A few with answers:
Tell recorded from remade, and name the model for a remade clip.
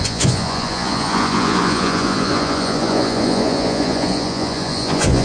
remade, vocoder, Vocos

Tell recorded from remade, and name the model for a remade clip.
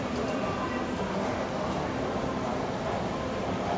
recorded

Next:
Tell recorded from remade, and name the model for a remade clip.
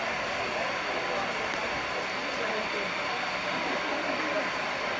recorded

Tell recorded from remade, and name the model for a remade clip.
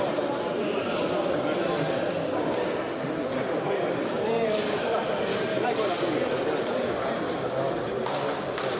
recorded